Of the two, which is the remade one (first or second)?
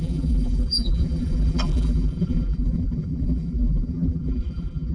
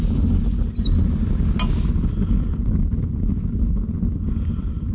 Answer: first